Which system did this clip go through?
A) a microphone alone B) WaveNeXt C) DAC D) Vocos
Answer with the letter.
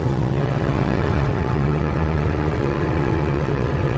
B